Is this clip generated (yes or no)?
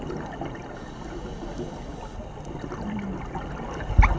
no